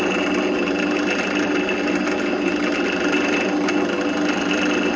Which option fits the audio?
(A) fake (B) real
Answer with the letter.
B